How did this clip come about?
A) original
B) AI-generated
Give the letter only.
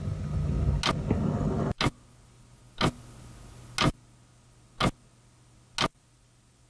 A